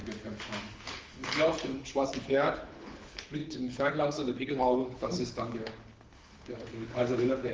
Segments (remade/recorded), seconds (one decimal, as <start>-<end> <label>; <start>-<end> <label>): 0.0-0.7 recorded; 0.7-7.5 remade